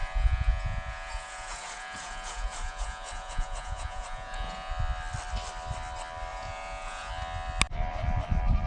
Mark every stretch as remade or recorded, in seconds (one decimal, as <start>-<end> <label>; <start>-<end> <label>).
0.0-4.7 remade; 4.7-6.3 recorded; 6.3-7.1 remade; 7.1-8.7 recorded